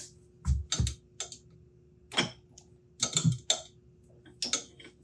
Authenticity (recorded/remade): recorded